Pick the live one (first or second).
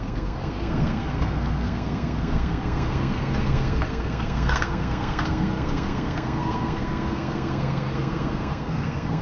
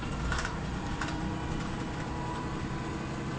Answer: second